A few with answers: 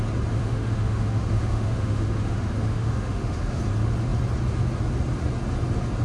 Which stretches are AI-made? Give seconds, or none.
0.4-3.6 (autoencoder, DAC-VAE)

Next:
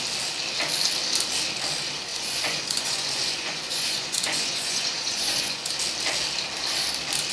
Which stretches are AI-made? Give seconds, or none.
2.1-5.7 (vocoder, Vocos)

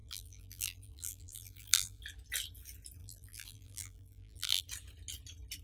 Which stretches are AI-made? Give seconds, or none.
0.0-2.0 (vocoder, BigVGAN v2); 3.0-4.6